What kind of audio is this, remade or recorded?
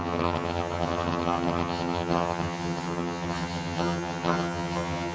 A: remade